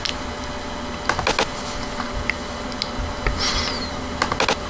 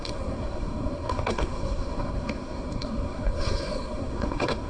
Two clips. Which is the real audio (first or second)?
first